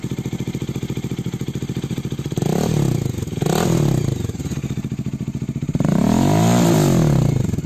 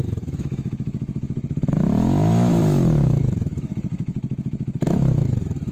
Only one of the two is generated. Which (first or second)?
second